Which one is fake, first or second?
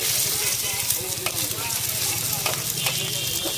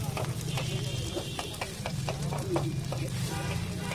second